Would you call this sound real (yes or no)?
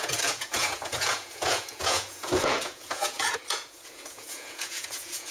no